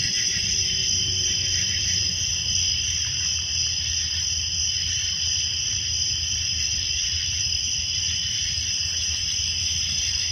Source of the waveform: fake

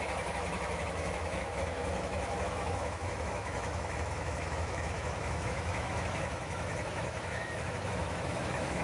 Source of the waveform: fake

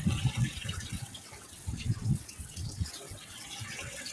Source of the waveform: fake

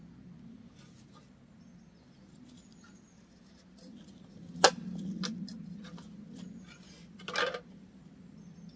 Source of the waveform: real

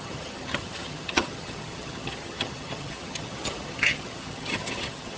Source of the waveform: fake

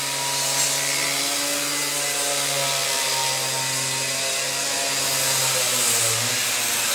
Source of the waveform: real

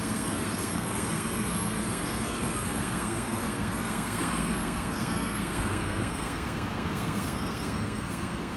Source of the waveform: fake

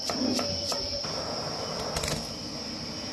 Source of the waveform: real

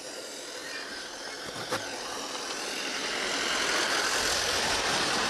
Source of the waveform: real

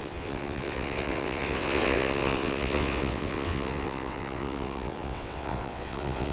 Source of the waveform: fake